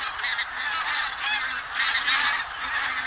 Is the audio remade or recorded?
recorded